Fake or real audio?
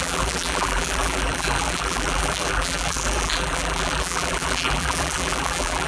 fake